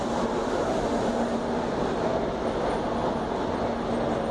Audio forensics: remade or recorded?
recorded